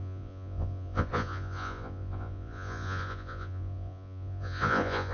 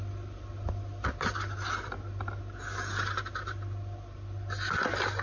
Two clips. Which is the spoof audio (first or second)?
first